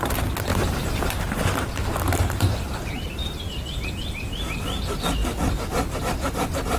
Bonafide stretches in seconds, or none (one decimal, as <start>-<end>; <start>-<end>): 0.0-0.5; 1.1-1.8; 3.4-6.8